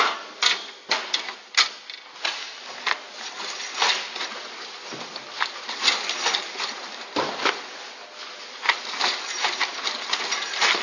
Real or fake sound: real